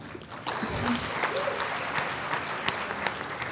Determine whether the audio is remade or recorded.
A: recorded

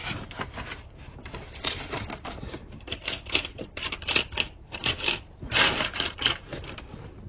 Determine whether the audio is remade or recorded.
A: remade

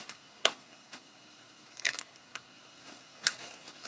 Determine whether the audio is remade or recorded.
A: remade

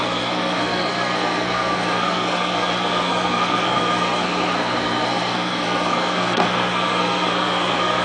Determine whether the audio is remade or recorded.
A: remade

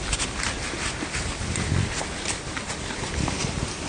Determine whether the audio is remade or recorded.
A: recorded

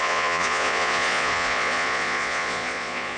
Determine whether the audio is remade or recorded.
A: remade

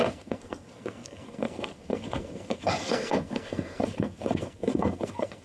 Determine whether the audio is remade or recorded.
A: remade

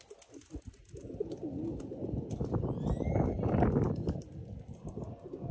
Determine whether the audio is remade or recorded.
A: recorded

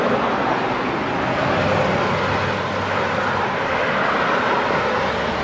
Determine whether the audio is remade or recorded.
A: recorded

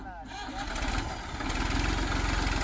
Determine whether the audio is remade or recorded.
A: recorded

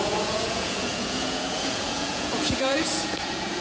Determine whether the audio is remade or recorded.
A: remade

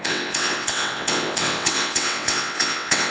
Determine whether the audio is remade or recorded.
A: remade